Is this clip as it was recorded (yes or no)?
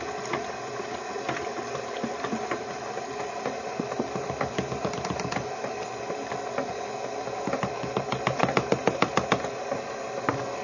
yes